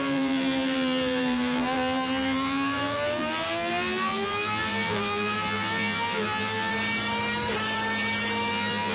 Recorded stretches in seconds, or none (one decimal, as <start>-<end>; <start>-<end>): 6.7-8.5